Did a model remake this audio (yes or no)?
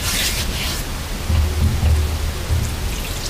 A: no